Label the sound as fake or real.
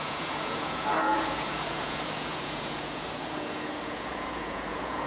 fake